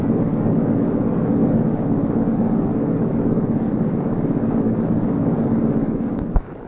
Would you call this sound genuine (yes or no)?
no